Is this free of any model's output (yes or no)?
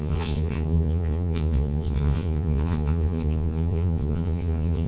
no